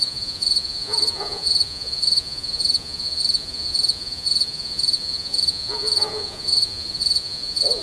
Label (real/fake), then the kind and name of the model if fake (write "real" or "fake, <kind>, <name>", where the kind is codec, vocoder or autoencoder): fake, vocoder, Vocos